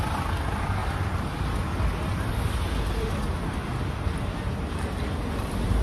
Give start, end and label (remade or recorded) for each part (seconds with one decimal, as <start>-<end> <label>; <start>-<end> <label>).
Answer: 0.0-5.8 recorded